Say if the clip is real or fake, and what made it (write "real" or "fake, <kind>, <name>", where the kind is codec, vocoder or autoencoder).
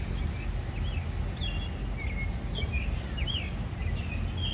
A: real